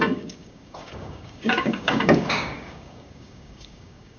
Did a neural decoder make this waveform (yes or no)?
yes